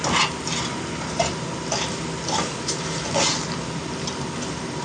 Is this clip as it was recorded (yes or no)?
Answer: yes